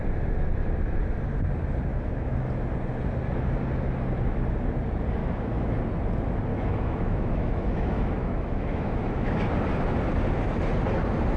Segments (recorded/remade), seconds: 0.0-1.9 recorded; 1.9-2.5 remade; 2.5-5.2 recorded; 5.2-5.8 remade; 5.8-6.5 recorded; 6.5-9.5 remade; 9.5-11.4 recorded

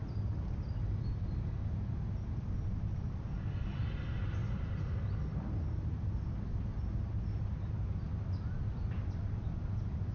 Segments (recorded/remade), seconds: 0.0-10.1 recorded